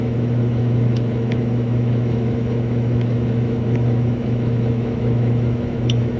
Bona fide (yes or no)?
no